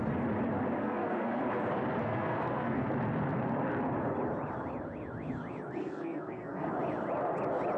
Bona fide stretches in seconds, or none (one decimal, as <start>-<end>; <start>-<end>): 0.0-0.8; 1.4-2.0; 2.9-5.8; 6.7-7.8